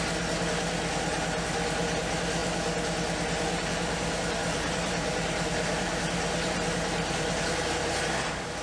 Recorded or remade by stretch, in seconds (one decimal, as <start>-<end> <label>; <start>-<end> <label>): 0.0-4.4 recorded; 4.4-7.4 remade; 7.4-8.6 recorded